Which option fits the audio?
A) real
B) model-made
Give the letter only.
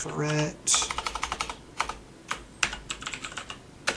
A